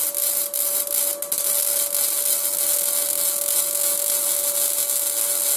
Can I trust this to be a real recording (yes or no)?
yes